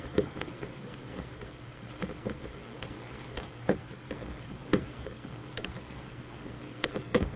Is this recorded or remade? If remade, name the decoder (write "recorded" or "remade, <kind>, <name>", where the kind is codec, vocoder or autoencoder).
remade, codec, SNAC